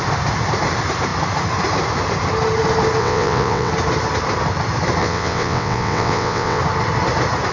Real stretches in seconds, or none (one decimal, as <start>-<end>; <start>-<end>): 0.0-3.0; 3.7-5.0; 6.6-7.5